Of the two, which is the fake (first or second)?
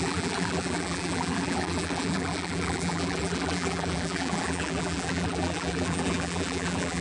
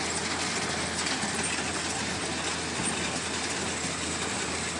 first